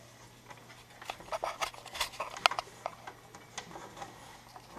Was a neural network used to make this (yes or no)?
no